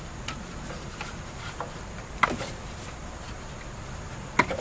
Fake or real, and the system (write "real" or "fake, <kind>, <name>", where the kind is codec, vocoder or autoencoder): real